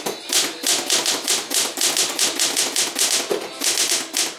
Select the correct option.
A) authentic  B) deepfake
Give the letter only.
A